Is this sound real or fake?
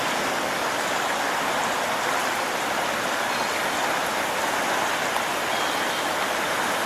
real